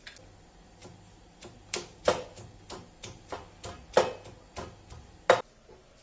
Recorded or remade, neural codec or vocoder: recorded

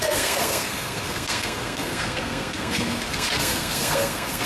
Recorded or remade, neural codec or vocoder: remade, codec, SNAC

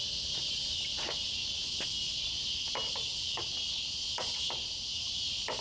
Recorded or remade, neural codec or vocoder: recorded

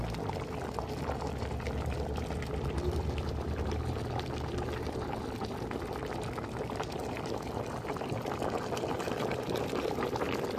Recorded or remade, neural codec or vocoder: recorded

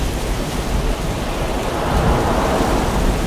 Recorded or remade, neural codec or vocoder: recorded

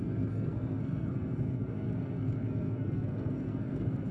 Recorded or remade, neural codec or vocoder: remade, codec, SNAC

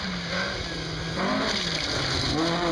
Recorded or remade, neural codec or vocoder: recorded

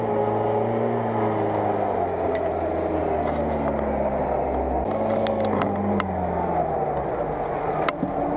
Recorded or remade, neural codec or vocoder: recorded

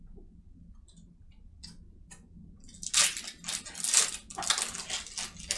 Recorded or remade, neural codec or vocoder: recorded